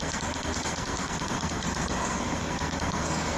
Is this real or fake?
fake